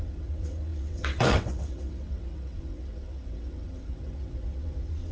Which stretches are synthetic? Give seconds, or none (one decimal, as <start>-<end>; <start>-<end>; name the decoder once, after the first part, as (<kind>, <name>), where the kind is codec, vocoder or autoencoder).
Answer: 0.0-5.1 (vocoder, WaveNeXt)